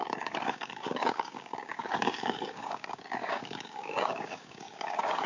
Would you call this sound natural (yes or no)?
no